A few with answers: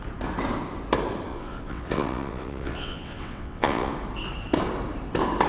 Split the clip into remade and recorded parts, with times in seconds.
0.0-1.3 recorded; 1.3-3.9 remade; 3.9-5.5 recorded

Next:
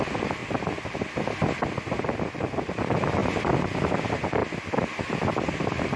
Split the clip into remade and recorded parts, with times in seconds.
0.0-3.2 recorded; 3.2-4.0 remade; 4.0-4.4 recorded; 4.4-6.0 remade